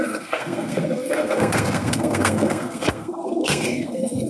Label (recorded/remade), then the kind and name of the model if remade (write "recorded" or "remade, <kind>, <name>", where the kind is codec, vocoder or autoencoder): remade, codec, SNAC